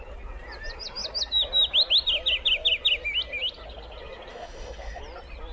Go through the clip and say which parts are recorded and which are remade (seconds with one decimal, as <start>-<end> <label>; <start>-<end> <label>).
0.0-4.3 recorded; 4.3-5.0 remade; 5.0-5.5 recorded